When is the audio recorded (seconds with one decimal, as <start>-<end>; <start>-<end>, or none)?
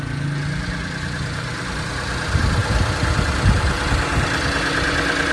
0.0-5.3